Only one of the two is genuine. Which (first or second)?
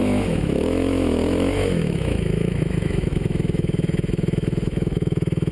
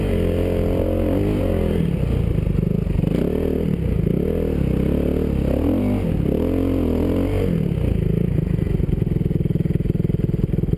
second